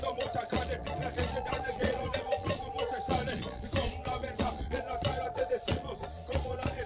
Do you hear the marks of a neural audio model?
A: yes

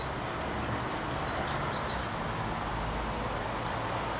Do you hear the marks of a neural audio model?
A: no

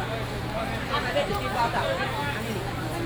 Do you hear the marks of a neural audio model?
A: no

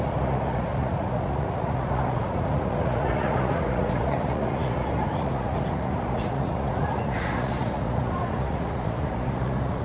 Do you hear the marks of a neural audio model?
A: yes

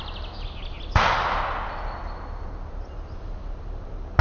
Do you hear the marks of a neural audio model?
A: no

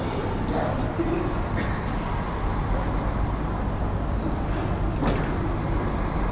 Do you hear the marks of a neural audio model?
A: no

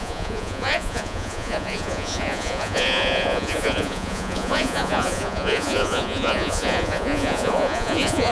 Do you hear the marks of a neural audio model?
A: yes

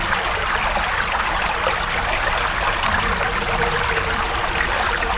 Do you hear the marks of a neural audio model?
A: no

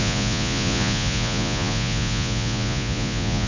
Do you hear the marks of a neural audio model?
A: yes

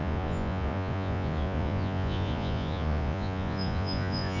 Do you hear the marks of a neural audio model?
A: yes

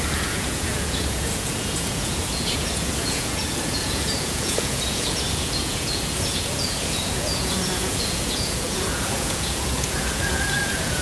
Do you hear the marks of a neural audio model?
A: yes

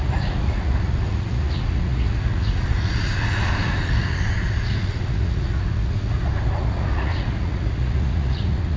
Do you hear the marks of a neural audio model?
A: yes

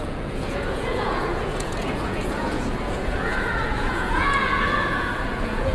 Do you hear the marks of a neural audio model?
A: yes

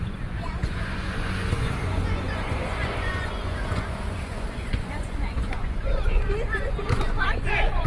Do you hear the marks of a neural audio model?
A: yes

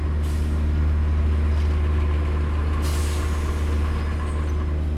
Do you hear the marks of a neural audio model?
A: no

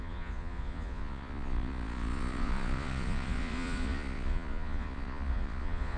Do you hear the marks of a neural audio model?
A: yes